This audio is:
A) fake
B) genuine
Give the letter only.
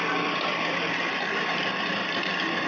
A